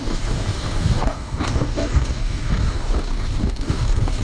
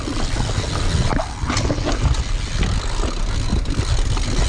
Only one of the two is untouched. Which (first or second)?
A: second